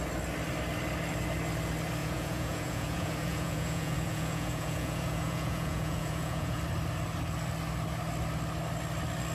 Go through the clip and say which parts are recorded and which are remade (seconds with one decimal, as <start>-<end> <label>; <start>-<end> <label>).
0.0-2.0 recorded; 2.0-6.6 remade; 6.6-9.3 recorded